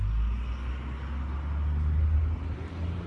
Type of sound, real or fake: real